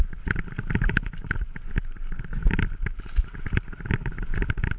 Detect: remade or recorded recorded